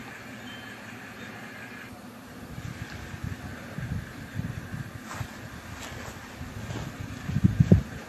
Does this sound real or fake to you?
real